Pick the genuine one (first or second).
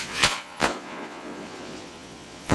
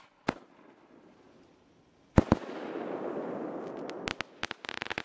second